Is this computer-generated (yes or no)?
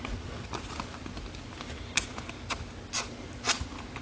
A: no